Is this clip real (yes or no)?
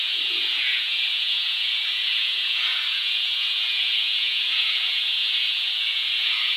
no